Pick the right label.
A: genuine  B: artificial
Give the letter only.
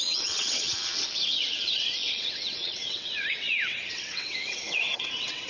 B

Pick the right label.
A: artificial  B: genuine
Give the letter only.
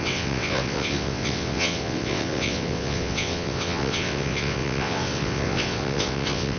A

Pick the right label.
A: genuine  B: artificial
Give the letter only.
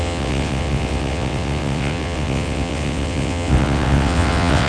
B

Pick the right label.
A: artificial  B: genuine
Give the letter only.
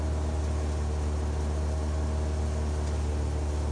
B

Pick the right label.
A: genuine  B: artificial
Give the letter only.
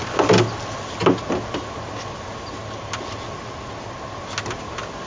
A